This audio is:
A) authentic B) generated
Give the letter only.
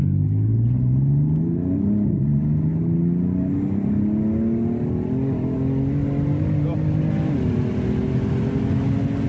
A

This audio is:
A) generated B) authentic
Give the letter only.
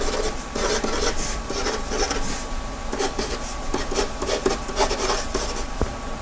B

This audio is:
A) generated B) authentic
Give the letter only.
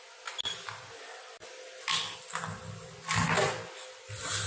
B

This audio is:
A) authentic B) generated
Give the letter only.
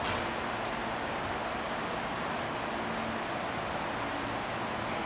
A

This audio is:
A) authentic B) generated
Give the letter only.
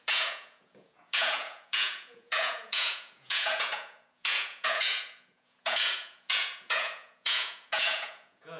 B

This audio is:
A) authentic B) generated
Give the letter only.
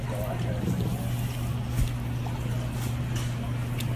A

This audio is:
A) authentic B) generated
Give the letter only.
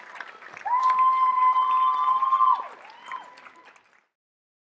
A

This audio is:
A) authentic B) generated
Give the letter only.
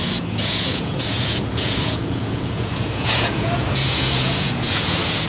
B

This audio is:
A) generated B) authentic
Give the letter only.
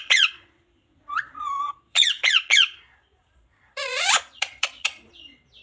A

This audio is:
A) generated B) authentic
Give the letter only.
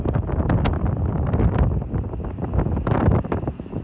B